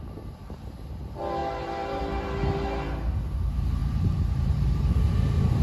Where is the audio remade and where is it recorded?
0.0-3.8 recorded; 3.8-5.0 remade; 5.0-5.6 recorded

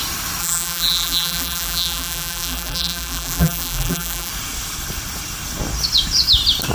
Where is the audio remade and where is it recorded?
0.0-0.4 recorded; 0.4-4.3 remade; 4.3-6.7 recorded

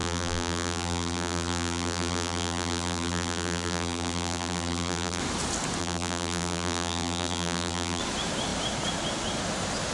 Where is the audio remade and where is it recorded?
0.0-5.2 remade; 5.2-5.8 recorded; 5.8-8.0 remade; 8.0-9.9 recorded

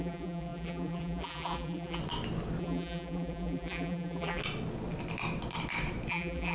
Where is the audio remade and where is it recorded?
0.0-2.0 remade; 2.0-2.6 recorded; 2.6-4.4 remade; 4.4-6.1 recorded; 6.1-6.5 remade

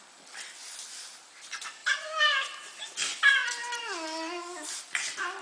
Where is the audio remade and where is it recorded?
0.0-0.9 recorded; 0.9-1.4 remade; 1.4-1.8 recorded; 1.8-2.8 remade; 2.8-5.4 recorded